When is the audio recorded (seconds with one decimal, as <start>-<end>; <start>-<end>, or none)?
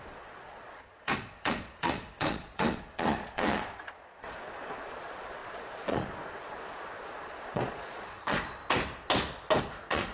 8.6-9.6